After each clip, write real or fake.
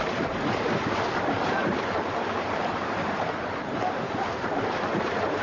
fake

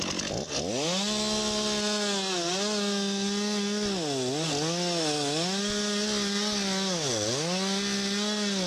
real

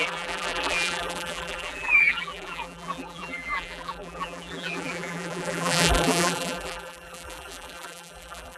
fake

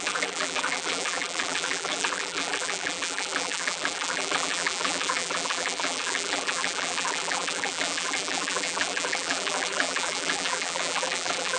fake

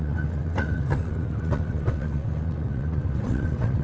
fake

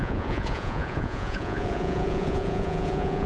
fake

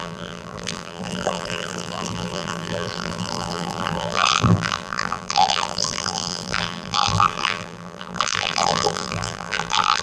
fake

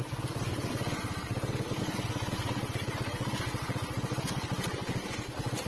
real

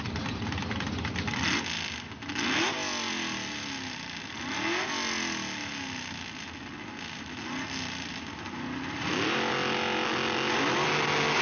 real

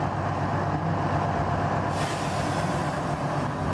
real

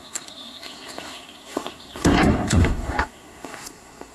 fake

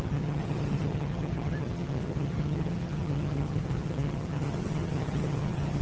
fake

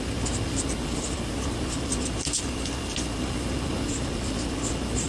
real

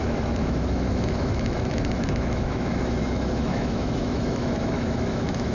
fake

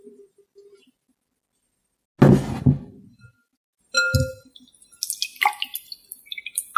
real